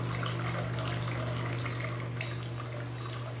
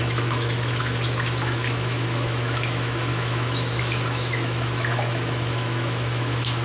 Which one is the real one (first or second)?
first